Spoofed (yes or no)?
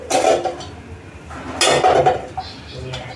no